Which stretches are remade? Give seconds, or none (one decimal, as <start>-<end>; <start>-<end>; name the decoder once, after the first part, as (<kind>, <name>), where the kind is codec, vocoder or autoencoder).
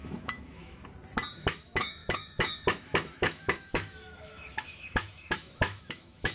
0.0-0.8 (autoencoder, DAC-VAE); 1.3-6.3